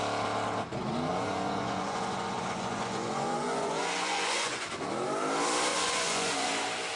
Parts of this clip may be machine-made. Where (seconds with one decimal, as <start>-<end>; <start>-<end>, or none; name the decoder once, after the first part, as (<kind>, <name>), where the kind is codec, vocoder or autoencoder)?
1.1-4.7 (vocoder, Vocos); 5.7-6.5